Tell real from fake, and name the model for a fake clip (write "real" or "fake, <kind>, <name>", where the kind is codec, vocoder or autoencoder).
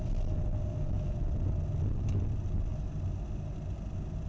real